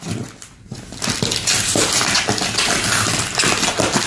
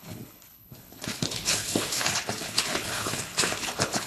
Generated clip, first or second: second